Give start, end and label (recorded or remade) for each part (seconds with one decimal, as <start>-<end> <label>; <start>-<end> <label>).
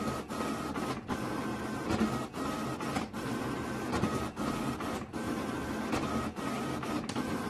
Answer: 0.0-7.5 recorded